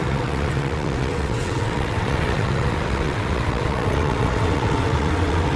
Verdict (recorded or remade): remade